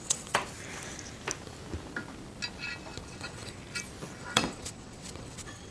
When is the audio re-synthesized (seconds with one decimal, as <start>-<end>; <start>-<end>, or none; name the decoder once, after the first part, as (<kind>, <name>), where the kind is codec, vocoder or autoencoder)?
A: 0.0-0.4 (vocoder, WaveNeXt); 3.1-3.6; 4.2-5.7